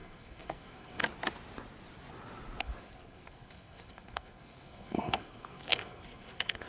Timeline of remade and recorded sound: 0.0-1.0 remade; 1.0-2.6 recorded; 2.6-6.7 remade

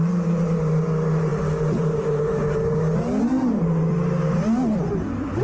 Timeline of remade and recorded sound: 0.0-5.4 recorded

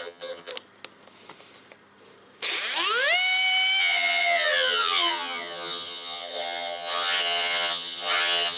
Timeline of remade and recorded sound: 0.0-0.5 remade; 0.5-3.8 recorded; 3.8-8.6 remade